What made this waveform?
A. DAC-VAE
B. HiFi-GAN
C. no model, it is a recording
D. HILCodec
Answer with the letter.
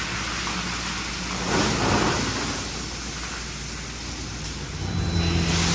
C